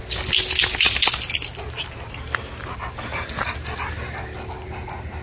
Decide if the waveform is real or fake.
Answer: real